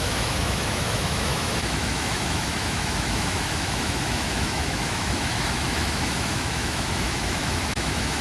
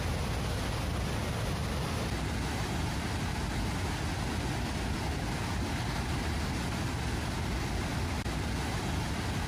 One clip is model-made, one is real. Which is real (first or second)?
second